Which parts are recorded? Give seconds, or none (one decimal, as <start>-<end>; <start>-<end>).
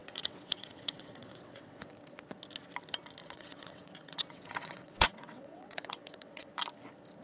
1.9-3.2; 6.5-7.2